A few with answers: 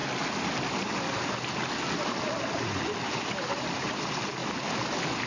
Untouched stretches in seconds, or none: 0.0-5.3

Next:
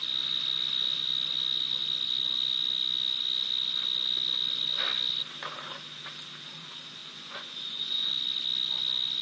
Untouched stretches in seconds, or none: 0.0-7.0; 8.1-9.2

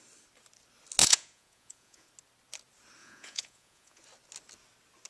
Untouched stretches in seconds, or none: 0.0-1.0; 2.1-3.0; 4.0-5.1